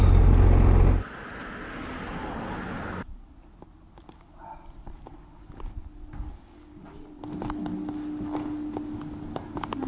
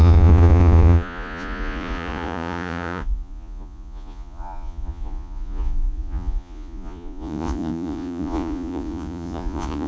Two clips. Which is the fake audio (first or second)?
second